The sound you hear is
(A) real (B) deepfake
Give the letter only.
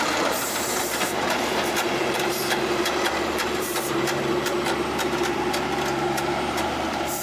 B